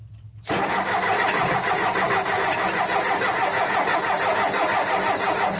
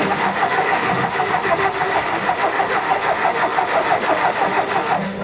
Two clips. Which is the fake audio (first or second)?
second